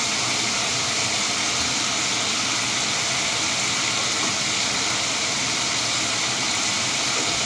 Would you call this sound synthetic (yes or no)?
no